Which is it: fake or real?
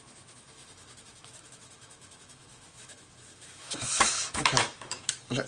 fake